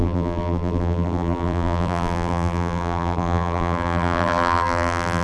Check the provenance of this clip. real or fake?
fake